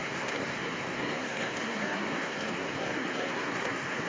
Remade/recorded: remade